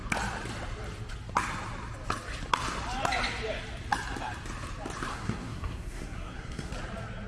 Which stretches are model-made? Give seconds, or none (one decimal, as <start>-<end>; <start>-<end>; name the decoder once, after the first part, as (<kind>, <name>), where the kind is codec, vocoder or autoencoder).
5.1-6.7 (codec, SNAC)